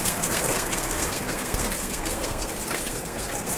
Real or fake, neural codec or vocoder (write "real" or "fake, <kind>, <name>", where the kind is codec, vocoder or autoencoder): fake, codec, SNAC